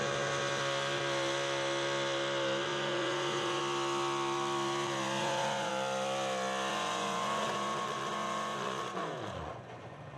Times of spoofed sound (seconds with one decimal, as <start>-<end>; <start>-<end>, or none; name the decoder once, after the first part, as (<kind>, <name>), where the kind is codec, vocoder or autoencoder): 2.7-3.6 (vocoder, Vocos); 5.2-5.7; 6.7-10.2